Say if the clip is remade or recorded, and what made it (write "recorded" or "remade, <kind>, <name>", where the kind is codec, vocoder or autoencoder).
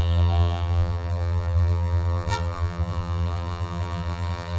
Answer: remade, vocoder, BigVGAN v2